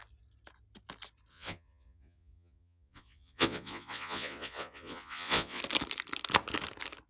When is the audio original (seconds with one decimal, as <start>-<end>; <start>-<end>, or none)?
0.0-1.3; 5.6-7.1